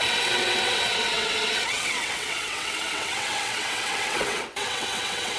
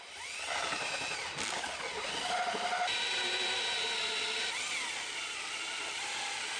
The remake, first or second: first